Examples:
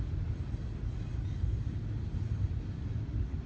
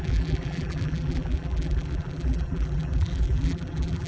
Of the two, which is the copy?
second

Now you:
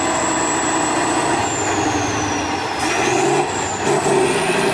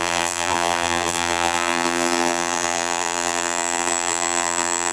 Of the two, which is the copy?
second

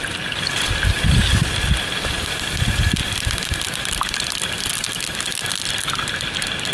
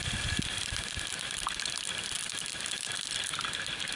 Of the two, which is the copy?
second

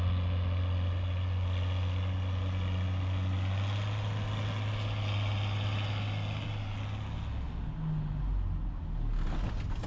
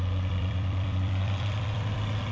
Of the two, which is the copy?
second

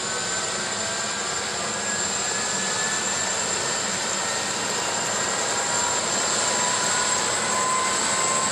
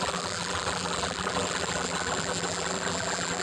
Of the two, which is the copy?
second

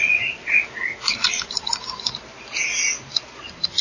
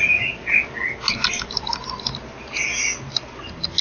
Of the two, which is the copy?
first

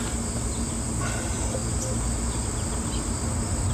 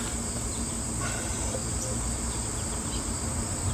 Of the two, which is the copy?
second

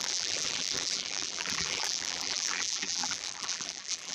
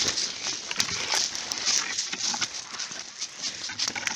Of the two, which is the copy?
first